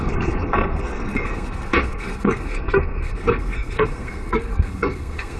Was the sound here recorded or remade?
remade